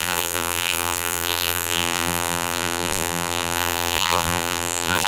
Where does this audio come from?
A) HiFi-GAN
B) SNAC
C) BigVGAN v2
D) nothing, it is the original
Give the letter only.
C